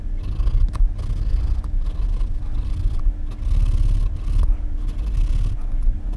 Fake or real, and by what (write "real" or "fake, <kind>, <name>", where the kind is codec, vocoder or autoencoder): real